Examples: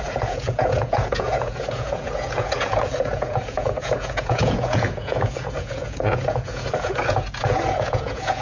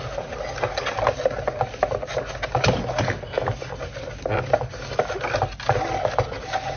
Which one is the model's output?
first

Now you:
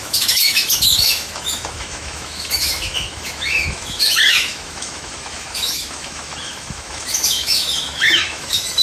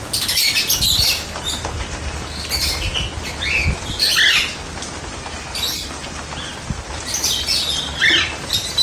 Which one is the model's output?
first